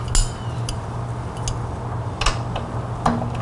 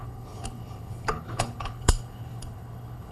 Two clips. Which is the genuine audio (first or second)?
first